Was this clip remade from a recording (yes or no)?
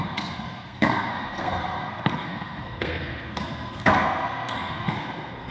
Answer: yes